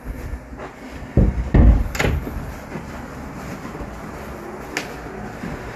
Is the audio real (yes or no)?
yes